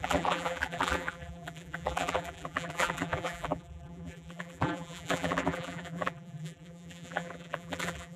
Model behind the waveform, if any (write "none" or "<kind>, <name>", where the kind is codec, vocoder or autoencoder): vocoder, BigVGAN v2